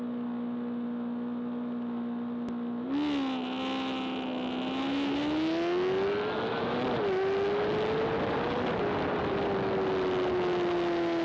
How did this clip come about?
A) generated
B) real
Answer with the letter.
B